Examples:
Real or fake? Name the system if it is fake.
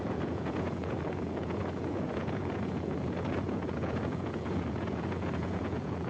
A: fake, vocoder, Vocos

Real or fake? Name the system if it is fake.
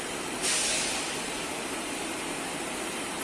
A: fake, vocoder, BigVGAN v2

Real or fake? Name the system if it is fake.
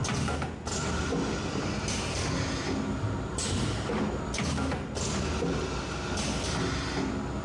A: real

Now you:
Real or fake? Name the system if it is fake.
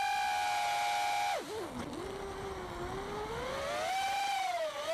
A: real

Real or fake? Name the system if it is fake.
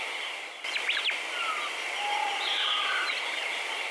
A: real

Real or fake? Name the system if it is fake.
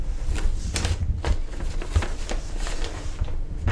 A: real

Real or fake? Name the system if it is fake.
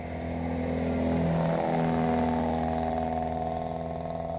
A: real